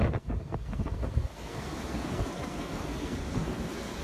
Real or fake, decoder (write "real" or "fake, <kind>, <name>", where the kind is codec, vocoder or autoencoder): fake, codec, SNAC